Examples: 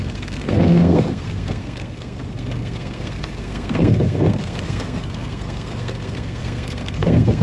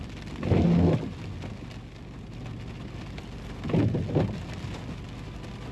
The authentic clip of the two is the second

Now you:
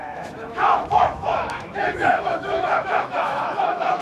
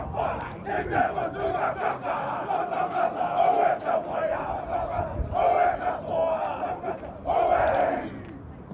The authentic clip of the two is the second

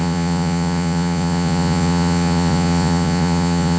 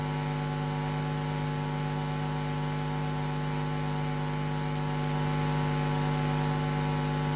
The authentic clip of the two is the second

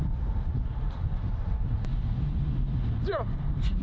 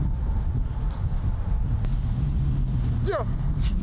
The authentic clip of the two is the second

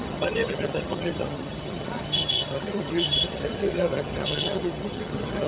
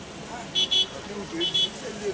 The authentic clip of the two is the second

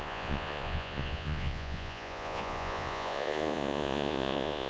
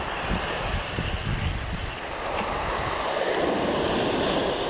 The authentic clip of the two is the second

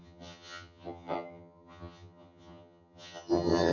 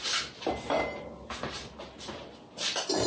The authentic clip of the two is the second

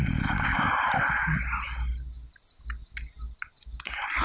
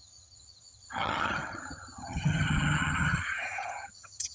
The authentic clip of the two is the first